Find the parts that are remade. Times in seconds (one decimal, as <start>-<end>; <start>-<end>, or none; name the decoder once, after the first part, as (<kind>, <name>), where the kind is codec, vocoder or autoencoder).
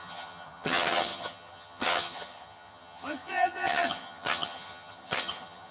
0.0-5.7 (vocoder, HiFi-GAN)